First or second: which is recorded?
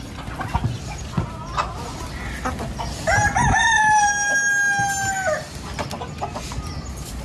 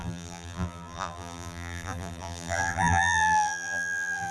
first